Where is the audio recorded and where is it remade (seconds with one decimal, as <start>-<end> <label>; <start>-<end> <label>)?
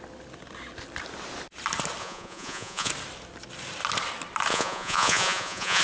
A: 0.0-2.0 recorded; 2.0-2.9 remade; 2.9-4.5 recorded; 4.5-5.8 remade